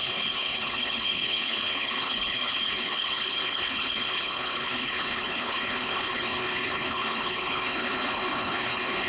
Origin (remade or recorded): remade